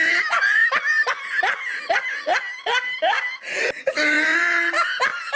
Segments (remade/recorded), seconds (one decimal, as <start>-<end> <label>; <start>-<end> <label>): 0.0-5.4 recorded

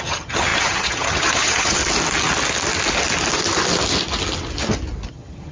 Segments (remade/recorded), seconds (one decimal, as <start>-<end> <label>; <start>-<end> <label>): 0.0-1.8 remade; 1.8-5.1 recorded; 5.1-5.5 remade

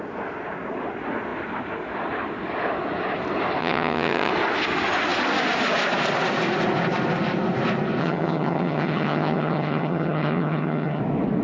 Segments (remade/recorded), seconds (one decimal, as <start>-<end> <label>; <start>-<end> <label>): 0.0-3.6 recorded; 3.6-4.3 remade; 4.3-8.0 recorded; 8.0-11.0 remade; 11.0-11.4 recorded

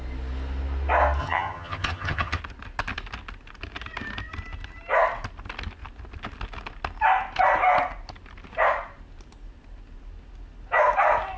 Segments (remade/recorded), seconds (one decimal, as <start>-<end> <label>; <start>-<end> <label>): 0.0-1.2 recorded; 1.2-2.4 remade; 2.4-11.4 recorded

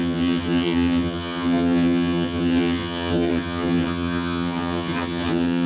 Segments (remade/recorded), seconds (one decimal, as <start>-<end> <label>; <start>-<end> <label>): 0.0-5.7 remade